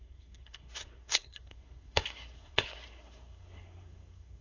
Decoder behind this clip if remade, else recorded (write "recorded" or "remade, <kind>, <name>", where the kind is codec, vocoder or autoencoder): remade, codec, SNAC